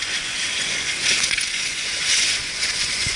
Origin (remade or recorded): remade